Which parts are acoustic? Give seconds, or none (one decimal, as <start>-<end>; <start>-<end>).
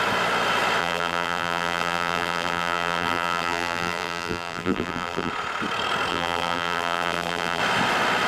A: 0.0-0.8; 5.3-6.1; 7.6-8.3